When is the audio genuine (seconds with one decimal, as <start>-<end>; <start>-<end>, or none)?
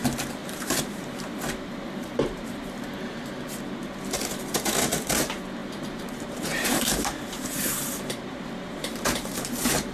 0.0-0.4; 3.3-5.6